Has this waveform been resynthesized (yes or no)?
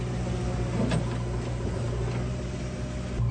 no